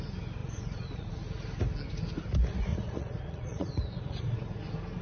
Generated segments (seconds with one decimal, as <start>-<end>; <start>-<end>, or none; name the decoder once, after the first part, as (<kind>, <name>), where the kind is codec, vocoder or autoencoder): 0.4-1.1 (vocoder, Vocos); 2.7-4.6